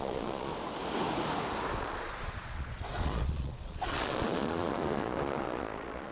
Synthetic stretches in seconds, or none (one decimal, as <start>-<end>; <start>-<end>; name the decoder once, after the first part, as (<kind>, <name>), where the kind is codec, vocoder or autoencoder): 0.0-0.5 (vocoder, Vocos); 1.8-6.1